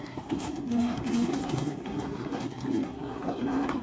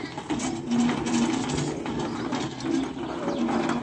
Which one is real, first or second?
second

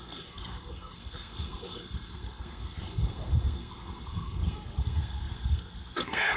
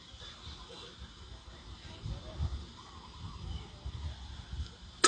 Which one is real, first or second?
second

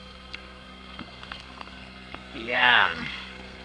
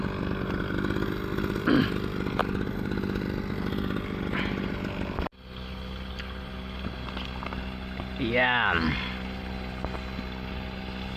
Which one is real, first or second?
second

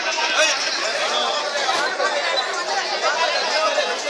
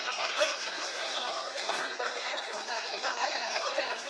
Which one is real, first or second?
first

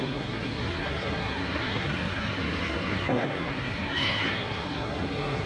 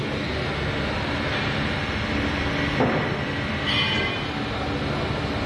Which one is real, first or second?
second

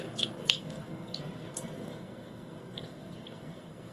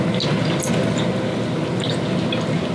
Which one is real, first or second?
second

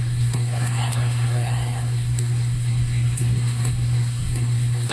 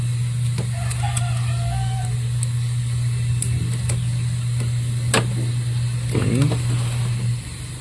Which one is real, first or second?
second